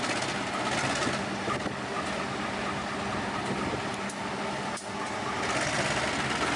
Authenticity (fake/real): real